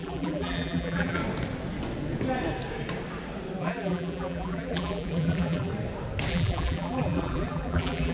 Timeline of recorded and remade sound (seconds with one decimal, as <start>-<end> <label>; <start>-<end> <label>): 0.0-1.2 remade; 1.2-3.6 recorded; 3.6-5.7 remade; 5.7-6.3 recorded; 6.3-8.1 remade